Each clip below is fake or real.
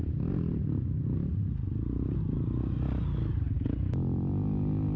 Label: real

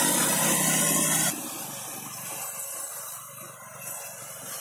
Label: real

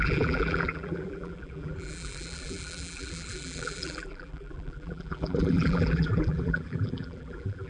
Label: fake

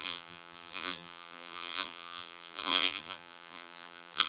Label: fake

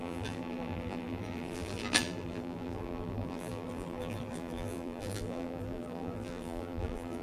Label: fake